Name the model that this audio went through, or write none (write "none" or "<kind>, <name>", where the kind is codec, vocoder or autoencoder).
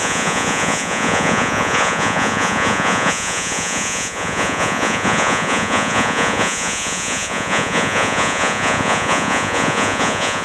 vocoder, Vocos